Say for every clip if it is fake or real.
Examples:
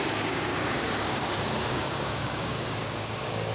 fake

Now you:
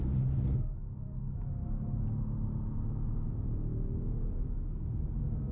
real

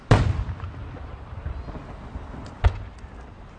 real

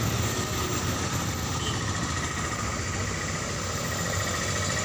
real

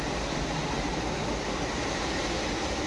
real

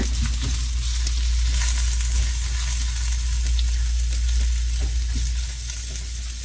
real